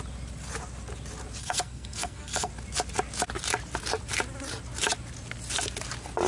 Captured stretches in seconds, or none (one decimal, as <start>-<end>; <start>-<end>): 0.0-1.4; 2.5-6.3